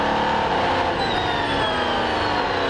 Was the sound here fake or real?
real